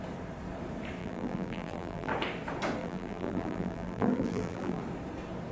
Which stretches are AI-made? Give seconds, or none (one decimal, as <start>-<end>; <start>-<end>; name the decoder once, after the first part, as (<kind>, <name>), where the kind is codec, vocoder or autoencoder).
1.0-2.1 (vocoder, BigVGAN v2); 2.8-4.8